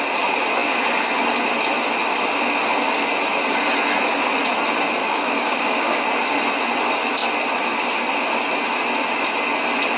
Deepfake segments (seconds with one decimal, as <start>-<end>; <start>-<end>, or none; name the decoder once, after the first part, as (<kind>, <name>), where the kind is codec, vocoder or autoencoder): 5.0-6.2 (codec, DAC)